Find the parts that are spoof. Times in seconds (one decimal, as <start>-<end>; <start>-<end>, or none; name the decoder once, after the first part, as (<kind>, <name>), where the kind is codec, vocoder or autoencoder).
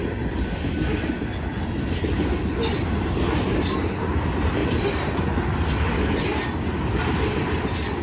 none